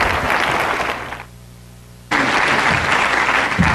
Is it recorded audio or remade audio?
recorded